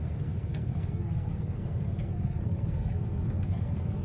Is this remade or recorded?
remade